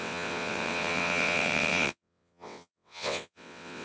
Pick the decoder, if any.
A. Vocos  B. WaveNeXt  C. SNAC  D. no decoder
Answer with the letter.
B